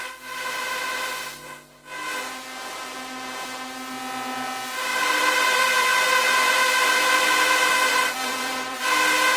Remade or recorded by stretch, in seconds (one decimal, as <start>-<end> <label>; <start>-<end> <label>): 0.0-4.9 recorded; 4.9-6.5 remade; 6.5-7.9 recorded; 7.9-8.8 remade; 8.8-9.4 recorded